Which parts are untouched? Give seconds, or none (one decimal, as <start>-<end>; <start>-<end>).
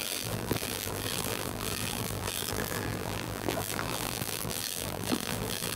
none